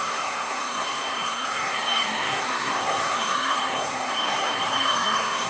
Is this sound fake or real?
fake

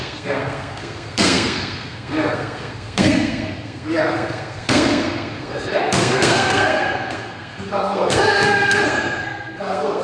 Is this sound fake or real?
fake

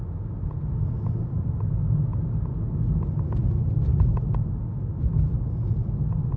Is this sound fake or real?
real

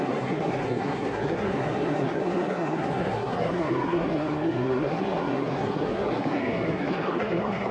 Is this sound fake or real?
fake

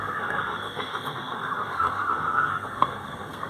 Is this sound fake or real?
fake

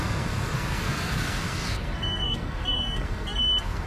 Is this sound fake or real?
fake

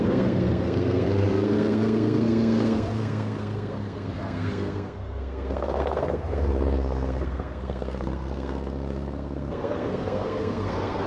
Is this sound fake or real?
fake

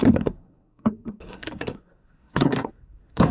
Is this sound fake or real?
fake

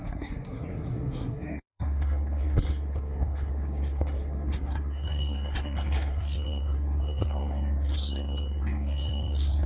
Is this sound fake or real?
fake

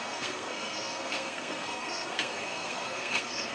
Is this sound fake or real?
fake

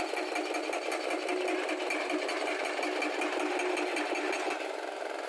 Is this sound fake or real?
real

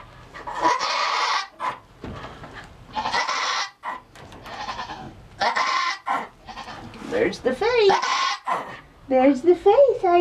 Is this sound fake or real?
real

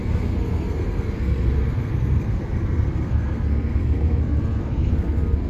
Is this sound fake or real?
fake